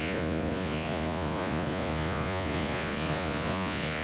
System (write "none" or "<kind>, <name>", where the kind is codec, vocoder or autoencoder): vocoder, Vocos